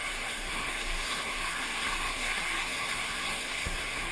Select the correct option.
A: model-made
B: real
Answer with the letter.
A